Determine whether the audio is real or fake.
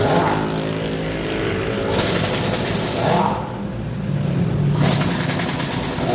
real